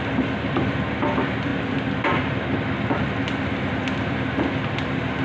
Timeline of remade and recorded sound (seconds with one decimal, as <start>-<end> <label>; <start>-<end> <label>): 0.0-5.2 recorded